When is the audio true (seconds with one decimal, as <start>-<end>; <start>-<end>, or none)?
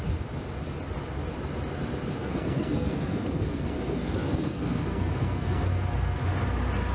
0.0-2.2; 6.2-6.9